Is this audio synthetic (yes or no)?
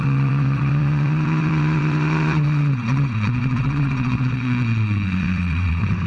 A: yes